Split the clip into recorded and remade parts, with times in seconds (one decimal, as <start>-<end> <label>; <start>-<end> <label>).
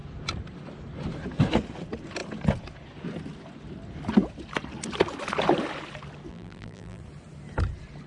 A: 0.0-6.3 recorded; 6.3-7.0 remade; 7.0-8.1 recorded